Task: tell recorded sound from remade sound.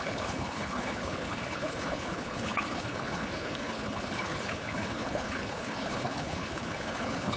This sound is remade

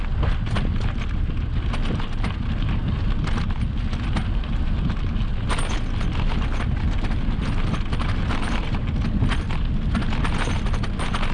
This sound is recorded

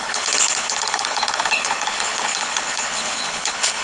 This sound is remade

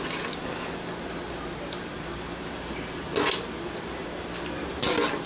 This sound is recorded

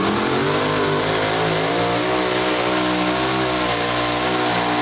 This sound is recorded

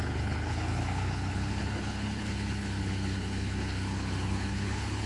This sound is remade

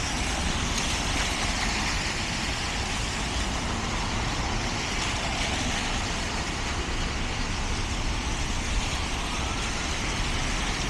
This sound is recorded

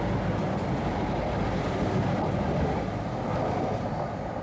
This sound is recorded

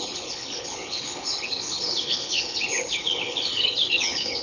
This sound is remade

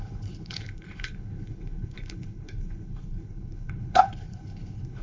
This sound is remade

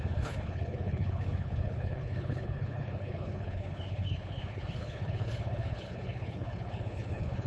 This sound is remade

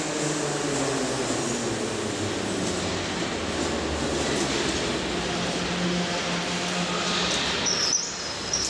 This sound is recorded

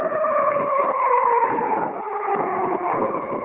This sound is remade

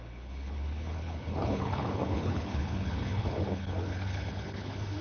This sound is remade